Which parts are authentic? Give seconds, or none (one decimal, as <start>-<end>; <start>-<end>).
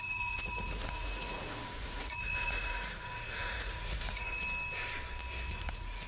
4.4-5.5